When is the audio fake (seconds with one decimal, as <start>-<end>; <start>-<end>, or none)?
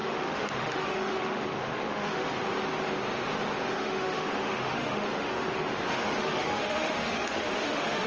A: 0.0-2.3; 3.7-8.1